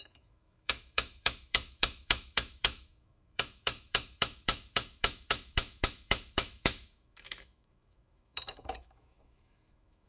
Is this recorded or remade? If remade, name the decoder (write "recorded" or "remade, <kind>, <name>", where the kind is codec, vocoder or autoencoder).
remade, autoencoder, DAC-VAE